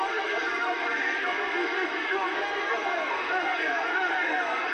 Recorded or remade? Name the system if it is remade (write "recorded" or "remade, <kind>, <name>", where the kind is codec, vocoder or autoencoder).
remade, codec, SNAC